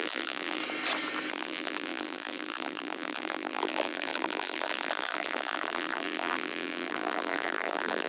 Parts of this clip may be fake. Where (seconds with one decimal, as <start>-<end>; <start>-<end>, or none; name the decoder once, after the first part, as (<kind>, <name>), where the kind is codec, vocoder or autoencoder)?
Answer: 0.0-0.6 (vocoder, BigVGAN v2); 1.3-8.1